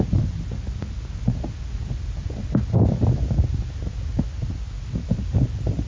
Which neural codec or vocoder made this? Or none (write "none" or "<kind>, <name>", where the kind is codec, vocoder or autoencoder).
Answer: none